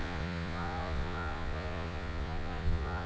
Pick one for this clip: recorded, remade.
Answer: remade